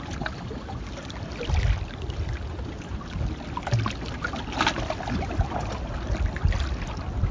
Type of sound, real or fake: real